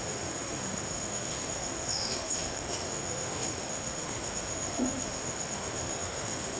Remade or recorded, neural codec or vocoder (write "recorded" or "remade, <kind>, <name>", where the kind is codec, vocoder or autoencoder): remade, autoencoder, DAC-VAE